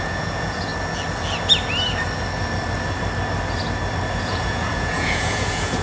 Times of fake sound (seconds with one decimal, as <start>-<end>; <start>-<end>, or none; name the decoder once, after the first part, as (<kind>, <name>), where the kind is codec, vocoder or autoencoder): 0.0-0.7 (vocoder, Vocos); 4.2-5.8